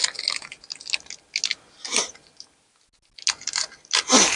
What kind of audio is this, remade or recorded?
recorded